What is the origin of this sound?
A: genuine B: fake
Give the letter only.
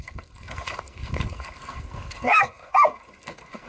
B